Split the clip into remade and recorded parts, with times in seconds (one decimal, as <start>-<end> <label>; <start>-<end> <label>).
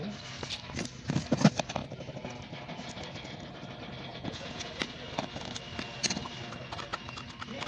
0.0-4.1 recorded; 4.1-4.7 remade; 4.7-7.7 recorded